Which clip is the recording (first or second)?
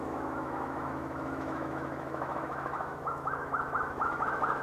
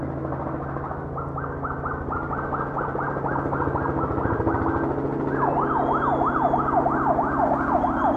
second